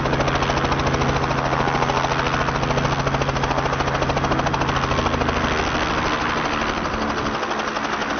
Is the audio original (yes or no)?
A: yes